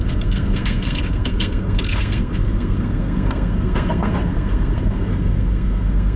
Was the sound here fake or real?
fake